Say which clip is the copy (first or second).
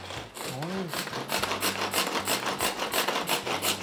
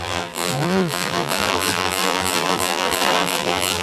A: second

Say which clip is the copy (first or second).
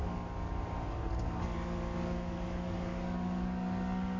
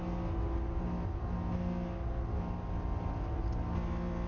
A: first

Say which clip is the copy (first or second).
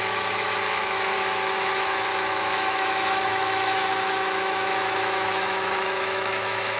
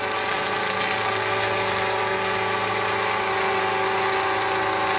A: first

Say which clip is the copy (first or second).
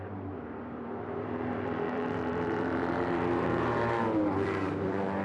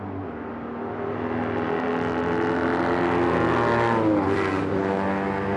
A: first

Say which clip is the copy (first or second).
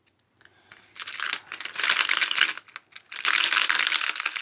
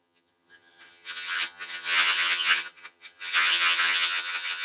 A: second